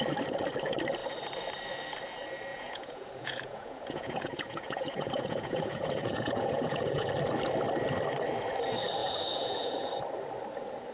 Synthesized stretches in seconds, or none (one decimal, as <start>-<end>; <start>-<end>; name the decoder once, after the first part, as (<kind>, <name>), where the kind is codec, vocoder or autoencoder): 2.5-7.1 (vocoder, Vocos); 9.0-9.9